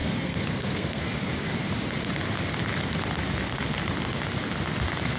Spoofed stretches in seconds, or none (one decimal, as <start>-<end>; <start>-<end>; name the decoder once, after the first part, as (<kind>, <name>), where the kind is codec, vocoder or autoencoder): 0.0-1.0 (codec, SNAC)